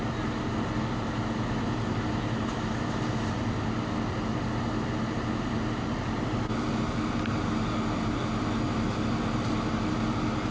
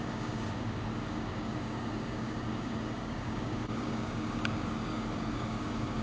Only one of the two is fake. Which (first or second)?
second